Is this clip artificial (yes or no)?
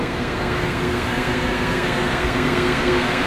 yes